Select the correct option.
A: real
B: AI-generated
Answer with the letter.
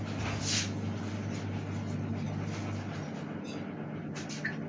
A